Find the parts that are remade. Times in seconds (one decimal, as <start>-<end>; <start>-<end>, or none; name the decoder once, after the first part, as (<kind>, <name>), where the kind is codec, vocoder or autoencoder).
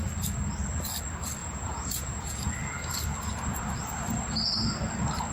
1.4-2.4 (vocoder, Vocos)